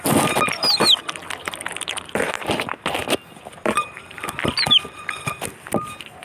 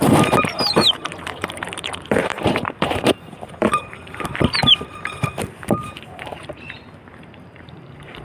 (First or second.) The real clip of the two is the first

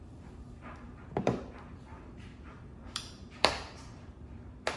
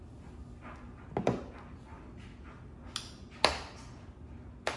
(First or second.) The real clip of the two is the second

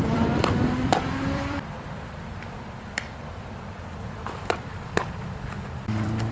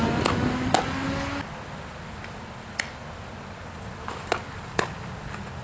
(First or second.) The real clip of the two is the second